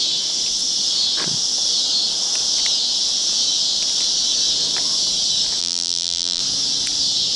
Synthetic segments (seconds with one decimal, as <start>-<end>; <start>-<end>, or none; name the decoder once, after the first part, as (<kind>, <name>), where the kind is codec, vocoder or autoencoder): 5.6-6.4 (vocoder, BigVGAN v2)